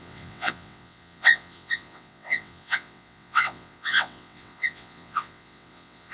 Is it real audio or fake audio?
fake